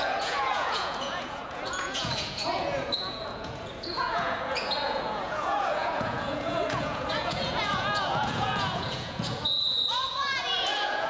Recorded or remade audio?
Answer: remade